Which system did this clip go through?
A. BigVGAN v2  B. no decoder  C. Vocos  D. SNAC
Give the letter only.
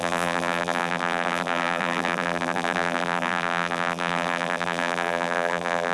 A